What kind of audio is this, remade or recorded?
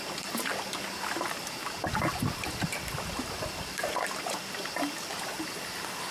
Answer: recorded